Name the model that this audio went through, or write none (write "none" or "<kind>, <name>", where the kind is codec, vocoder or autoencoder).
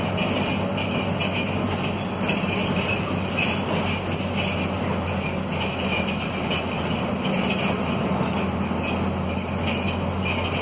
none